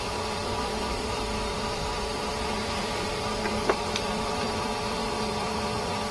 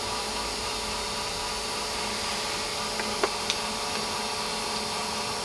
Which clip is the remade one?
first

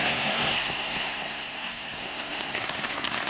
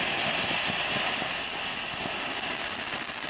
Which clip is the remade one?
first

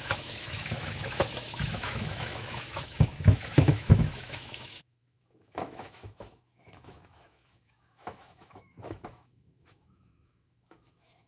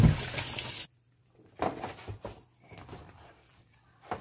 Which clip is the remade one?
first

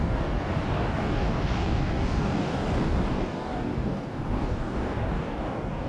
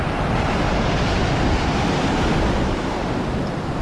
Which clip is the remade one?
first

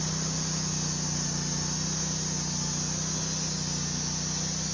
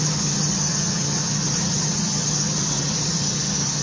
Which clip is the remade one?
second